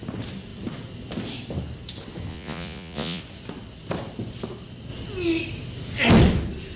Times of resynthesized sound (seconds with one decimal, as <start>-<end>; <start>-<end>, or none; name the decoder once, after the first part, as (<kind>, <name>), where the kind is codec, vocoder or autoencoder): 2.3-3.2 (vocoder, Vocos)